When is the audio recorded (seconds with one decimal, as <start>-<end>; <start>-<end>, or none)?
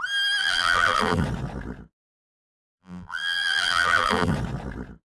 0.0-0.4; 1.2-2.7; 4.3-5.1